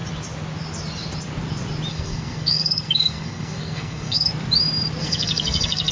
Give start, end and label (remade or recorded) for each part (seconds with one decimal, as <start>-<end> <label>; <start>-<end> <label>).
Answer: 0.0-1.9 recorded; 1.9-4.3 remade; 4.3-5.0 recorded; 5.0-5.9 remade